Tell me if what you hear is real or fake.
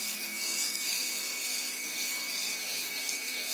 fake